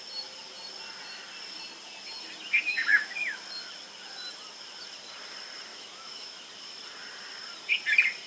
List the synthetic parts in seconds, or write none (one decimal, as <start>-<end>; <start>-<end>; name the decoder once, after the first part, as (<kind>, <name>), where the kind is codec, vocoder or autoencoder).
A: 2.7-3.4 (autoencoder, DAC-VAE); 5.7-6.4